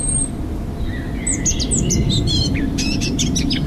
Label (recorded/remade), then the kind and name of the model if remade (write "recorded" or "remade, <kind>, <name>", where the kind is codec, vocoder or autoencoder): recorded